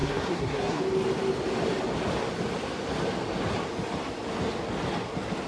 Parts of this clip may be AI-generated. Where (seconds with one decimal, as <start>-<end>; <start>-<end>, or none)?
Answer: 0.0-0.8